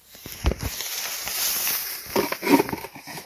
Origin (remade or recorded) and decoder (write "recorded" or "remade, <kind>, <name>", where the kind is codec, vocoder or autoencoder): recorded